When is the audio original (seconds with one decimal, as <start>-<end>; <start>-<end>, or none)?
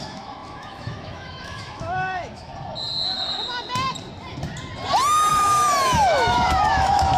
2.5-5.3